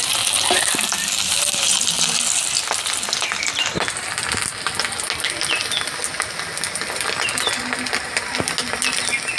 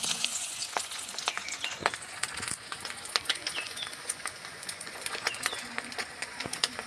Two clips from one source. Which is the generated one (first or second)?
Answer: second